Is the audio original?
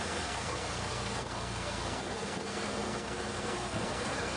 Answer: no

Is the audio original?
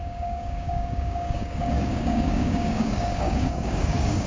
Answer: no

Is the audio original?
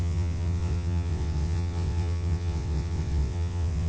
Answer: no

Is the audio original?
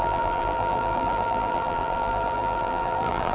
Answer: no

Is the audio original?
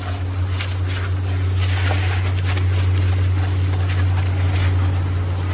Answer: yes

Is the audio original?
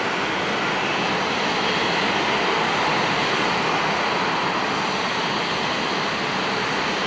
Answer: yes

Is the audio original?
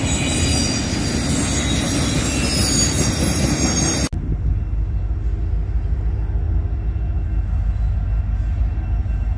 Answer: yes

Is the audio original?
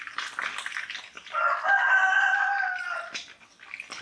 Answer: yes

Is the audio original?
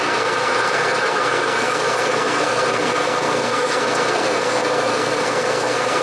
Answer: no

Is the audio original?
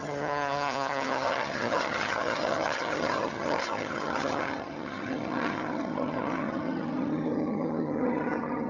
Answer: no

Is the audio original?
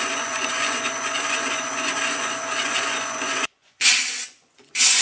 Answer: no